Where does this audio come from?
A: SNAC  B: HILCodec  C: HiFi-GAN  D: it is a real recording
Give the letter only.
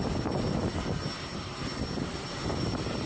D